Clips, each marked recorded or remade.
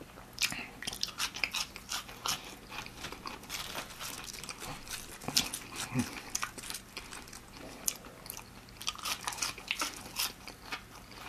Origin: recorded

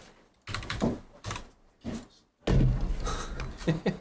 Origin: recorded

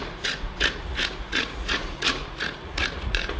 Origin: remade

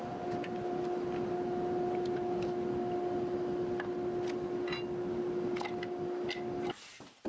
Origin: recorded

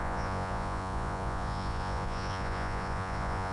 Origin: remade